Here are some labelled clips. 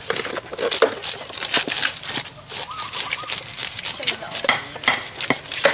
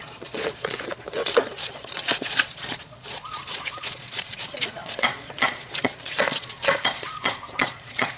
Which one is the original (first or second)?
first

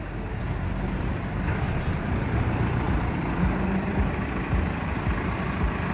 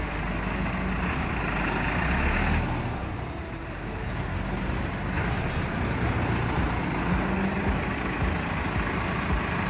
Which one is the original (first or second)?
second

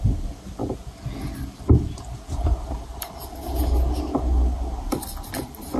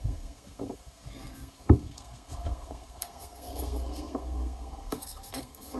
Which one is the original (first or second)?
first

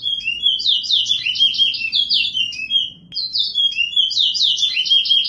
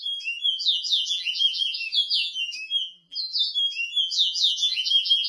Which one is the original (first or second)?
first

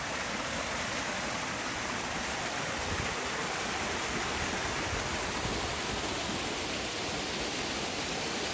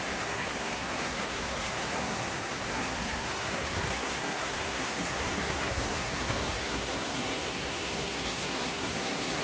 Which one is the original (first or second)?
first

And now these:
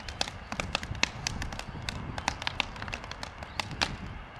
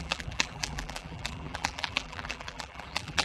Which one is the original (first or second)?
first